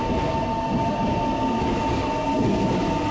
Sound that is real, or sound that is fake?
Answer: real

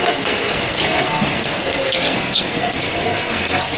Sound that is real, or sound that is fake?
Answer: fake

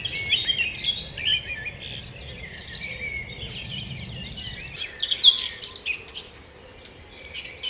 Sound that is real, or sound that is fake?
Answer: real